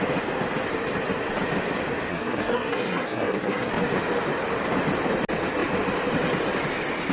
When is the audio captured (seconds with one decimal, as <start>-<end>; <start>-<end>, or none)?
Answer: 0.0-2.1; 3.7-7.1